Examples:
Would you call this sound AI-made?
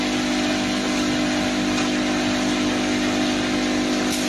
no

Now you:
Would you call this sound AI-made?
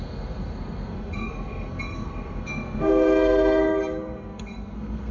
yes